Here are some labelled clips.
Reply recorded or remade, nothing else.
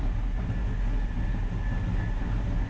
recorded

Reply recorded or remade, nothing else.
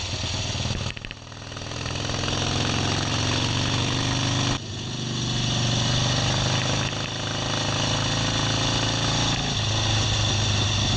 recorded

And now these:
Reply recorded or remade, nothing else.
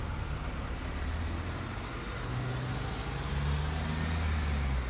recorded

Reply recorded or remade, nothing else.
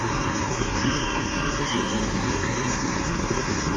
remade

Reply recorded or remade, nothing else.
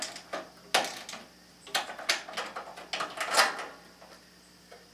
recorded